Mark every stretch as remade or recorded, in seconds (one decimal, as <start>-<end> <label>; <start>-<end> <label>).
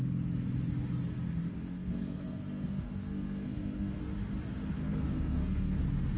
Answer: 0.0-1.5 recorded; 1.5-4.0 remade; 4.0-4.8 recorded; 4.8-5.8 remade; 5.8-6.2 recorded